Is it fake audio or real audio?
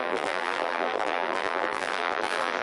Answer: fake